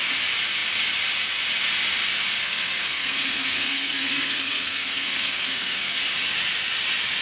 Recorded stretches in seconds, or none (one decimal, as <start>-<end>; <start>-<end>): 0.0-2.4; 6.0-7.2